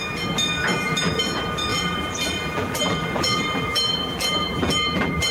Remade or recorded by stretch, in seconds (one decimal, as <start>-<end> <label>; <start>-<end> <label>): 0.0-0.7 recorded; 0.7-1.2 remade; 1.2-1.7 recorded; 1.7-5.3 remade